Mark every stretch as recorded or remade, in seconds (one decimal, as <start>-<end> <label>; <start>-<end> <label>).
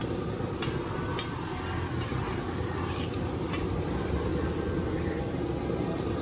0.0-4.3 remade; 4.3-5.8 recorded; 5.8-6.2 remade